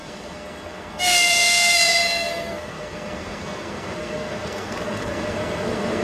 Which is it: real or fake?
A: fake